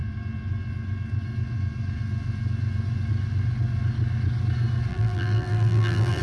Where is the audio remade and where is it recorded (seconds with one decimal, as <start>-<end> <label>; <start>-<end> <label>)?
0.0-4.9 recorded; 4.9-6.2 remade